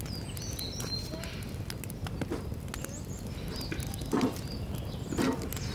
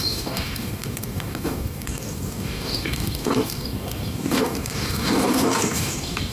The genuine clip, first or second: first